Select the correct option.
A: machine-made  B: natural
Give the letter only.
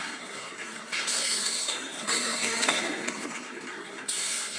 A